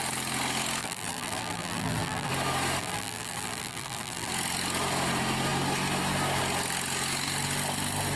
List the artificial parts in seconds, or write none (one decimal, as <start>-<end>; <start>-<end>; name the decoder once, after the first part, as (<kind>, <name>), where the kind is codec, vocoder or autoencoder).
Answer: 0.8-2.3 (vocoder, BigVGAN v2); 2.8-4.3